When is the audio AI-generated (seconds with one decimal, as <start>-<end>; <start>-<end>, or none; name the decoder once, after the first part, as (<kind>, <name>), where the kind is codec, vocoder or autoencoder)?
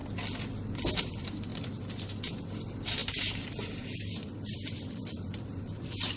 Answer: 0.9-1.5 (vocoder, BigVGAN v2); 2.6-6.2